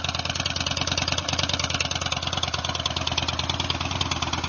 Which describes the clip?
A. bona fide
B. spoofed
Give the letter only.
A